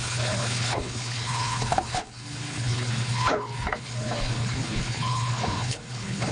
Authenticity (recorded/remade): remade